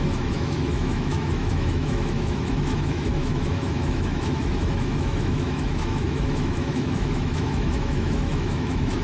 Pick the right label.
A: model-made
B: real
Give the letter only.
A